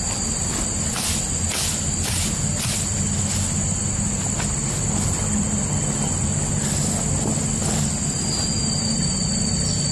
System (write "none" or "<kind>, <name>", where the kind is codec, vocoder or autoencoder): none